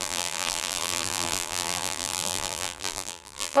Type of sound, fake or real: fake